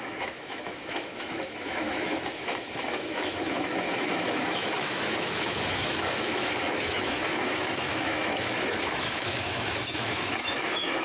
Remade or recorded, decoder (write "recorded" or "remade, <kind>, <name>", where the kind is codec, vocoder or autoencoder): remade, autoencoder, DAC-VAE